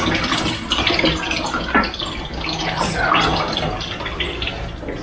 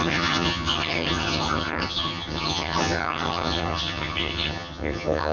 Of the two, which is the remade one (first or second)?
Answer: second